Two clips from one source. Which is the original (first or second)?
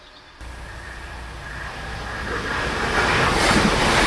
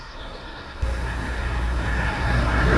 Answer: first